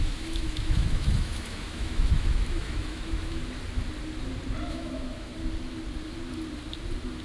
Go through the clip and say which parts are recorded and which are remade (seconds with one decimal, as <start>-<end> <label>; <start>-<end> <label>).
0.0-3.4 remade; 3.4-4.7 recorded; 4.7-5.3 remade; 5.3-7.2 recorded